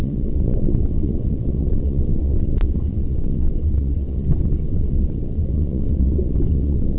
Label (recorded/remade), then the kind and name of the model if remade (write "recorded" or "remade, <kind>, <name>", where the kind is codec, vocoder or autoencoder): remade, vocoder, WaveNeXt